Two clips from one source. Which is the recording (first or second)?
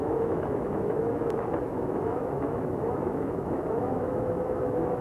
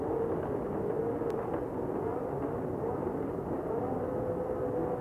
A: second